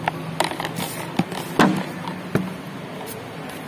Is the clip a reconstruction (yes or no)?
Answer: no